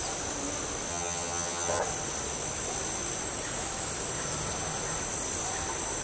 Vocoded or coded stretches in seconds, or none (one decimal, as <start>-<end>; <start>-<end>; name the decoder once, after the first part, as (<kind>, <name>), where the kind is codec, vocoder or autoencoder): 0.9-1.8 (vocoder, HiFi-GAN)

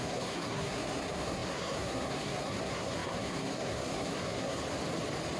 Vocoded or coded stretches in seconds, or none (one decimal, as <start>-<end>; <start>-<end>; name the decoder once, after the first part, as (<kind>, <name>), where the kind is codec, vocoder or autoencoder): 0.0-4.6 (codec, SNAC)

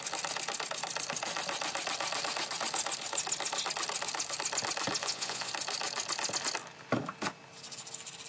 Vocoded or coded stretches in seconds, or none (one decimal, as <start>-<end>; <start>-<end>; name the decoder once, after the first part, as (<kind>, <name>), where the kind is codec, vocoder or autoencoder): 5.0-5.5 (vocoder, Vocos)

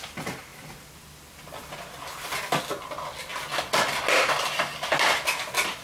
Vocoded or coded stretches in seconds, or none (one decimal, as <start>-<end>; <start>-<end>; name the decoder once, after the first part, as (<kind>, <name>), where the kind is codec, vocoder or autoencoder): 0.5-2.6 (vocoder, BigVGAN v2)

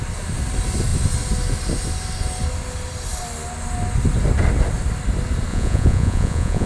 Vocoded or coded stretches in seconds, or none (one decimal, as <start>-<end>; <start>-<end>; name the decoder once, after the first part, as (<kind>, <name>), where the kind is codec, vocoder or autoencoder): 5.5-6.7 (vocoder, Vocos)

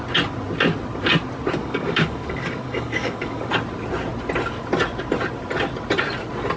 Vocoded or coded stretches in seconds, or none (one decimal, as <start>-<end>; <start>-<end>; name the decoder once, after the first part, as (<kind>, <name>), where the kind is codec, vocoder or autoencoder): 1.6-3.5 (codec, DAC)